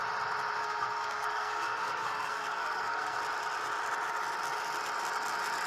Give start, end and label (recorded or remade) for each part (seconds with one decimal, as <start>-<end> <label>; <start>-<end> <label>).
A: 0.0-0.6 recorded; 0.6-3.2 remade; 3.2-5.7 recorded

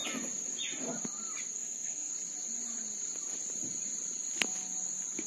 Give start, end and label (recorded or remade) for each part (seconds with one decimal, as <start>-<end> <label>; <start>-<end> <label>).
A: 0.0-1.5 recorded; 1.5-2.1 remade; 2.1-5.3 recorded

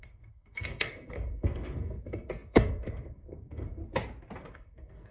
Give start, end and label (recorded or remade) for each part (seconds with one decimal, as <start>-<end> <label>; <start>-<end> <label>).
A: 0.0-3.8 remade; 3.8-4.4 recorded; 4.4-5.1 remade

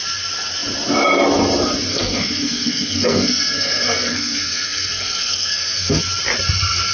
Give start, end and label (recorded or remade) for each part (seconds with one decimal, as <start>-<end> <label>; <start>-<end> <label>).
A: 0.0-1.9 recorded; 1.9-6.0 remade; 6.0-6.9 recorded